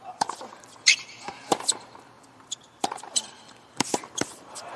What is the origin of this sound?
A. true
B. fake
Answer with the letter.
B